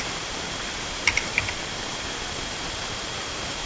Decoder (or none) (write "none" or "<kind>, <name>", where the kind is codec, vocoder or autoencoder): vocoder, BigVGAN v2